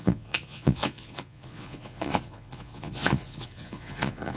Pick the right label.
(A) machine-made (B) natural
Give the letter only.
A